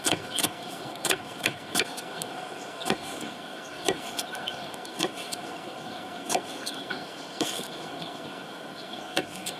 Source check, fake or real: fake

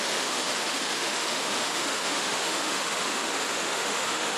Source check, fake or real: fake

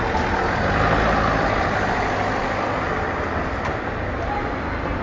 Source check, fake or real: real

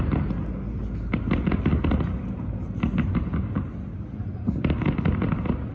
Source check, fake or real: real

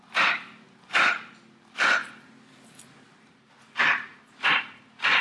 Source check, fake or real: real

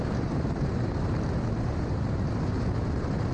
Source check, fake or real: fake